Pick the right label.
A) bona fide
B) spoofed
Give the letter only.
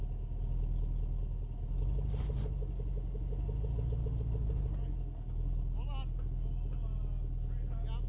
A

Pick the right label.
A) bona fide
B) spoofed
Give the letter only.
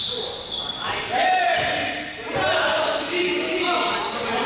A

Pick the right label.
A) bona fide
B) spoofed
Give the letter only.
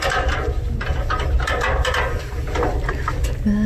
A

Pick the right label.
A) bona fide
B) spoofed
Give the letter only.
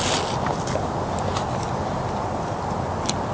A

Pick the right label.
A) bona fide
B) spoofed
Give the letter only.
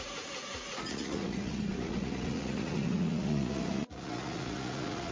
B